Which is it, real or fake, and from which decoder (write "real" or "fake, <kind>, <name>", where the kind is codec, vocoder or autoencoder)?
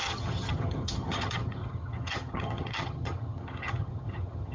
fake, vocoder, HiFi-GAN